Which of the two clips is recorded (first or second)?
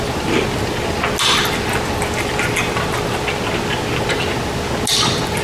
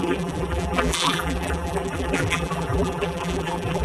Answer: first